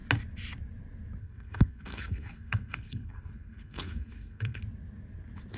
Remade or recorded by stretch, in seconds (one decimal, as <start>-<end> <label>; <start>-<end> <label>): 0.0-1.2 recorded; 1.2-4.6 remade; 4.6-5.6 recorded